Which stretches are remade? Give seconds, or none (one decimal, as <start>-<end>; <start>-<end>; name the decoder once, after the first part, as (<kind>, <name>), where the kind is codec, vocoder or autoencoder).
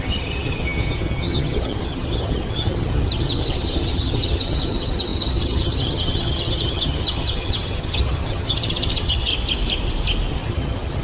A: 0.0-9.3 (vocoder, HiFi-GAN); 10.3-11.0